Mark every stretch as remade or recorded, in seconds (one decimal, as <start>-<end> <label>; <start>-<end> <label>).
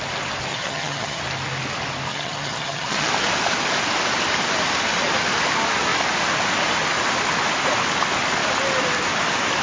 0.0-0.5 recorded; 0.5-1.2 remade; 1.2-2.1 recorded; 2.1-3.1 remade; 3.1-9.6 recorded